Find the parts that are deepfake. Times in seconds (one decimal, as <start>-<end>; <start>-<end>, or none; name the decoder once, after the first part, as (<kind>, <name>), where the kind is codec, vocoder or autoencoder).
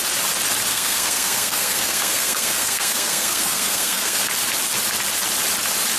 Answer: 0.7-4.3 (codec, SNAC)